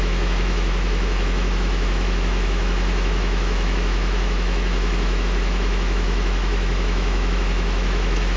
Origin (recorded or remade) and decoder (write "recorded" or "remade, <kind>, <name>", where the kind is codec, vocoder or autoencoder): remade, autoencoder, DAC-VAE